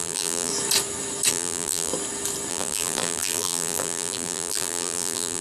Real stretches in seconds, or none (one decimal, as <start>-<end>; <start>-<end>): 0.5-1.3; 1.9-2.5